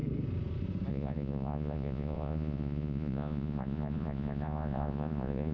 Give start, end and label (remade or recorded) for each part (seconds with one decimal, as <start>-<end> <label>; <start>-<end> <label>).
0.0-0.9 recorded; 0.9-5.5 remade